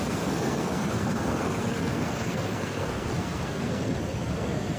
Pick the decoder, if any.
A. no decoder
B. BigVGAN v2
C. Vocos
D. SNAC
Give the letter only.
D